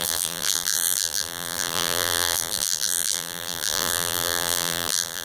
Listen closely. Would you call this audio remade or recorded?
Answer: remade